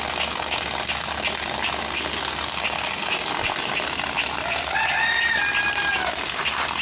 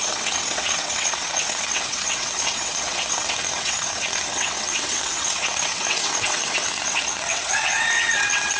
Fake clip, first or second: second